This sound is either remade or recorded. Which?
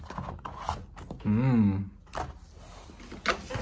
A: recorded